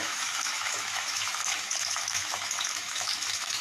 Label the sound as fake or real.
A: fake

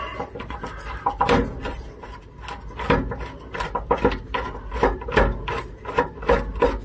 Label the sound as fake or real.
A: real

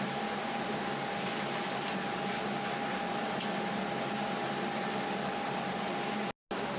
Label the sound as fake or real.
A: real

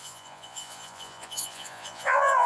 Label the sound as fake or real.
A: fake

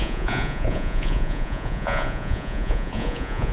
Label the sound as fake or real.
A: fake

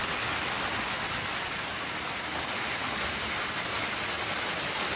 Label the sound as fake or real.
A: real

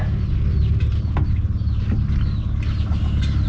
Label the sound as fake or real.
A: real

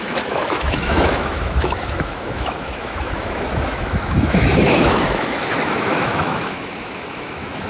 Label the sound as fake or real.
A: fake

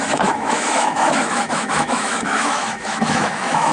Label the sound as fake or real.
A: fake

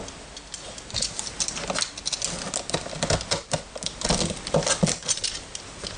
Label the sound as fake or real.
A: real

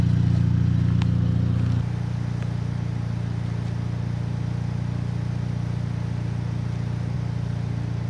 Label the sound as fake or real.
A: real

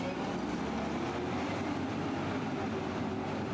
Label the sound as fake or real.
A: real